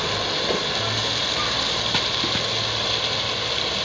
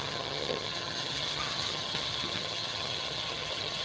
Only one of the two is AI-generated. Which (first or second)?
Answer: second